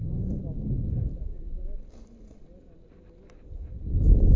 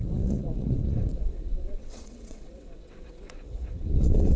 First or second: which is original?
first